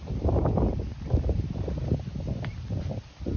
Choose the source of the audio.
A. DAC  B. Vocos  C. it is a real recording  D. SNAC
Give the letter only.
C